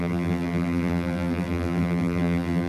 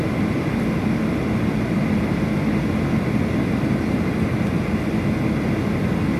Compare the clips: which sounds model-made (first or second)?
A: first